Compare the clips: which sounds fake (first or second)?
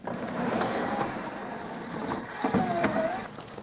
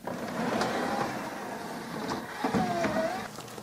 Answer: first